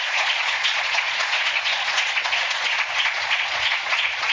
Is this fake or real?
fake